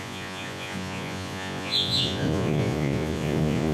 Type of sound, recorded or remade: remade